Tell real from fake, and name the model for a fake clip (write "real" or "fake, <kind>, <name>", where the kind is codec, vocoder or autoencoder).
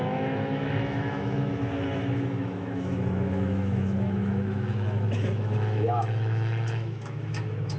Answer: fake, autoencoder, DAC-VAE